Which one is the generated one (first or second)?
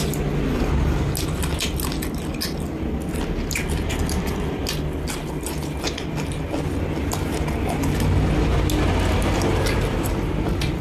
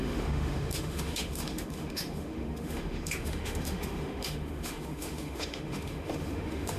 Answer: second